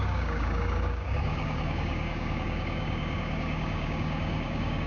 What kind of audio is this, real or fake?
fake